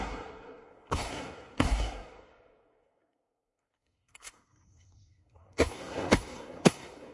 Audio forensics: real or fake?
fake